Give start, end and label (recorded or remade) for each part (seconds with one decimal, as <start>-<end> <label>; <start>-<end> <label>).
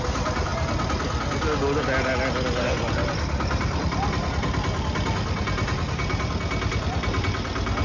0.0-7.8 recorded